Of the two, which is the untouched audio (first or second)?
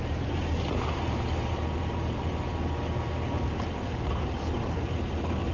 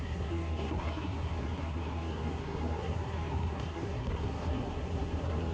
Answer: first